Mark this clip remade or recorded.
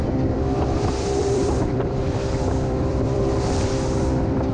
remade